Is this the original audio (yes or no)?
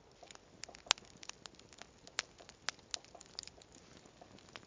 yes